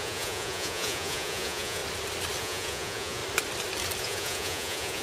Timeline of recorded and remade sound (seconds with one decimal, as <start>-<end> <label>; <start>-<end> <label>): 0.0-1.8 remade; 1.8-2.4 recorded; 2.4-3.2 remade; 3.2-4.0 recorded; 4.0-5.0 remade